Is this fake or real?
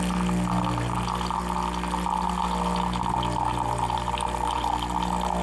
real